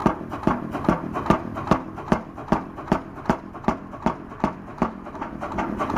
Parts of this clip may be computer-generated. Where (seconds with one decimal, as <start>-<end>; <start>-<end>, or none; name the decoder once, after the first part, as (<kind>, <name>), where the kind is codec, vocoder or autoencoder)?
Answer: 4.7-5.4 (autoencoder, DAC-VAE)